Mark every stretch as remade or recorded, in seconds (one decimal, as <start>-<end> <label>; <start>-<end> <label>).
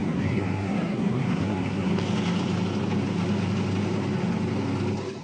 0.0-1.9 remade; 1.9-5.2 recorded